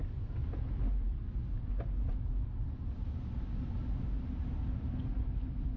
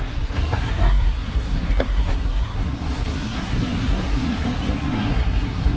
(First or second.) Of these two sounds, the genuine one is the first